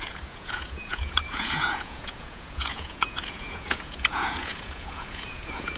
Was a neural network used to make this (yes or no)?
yes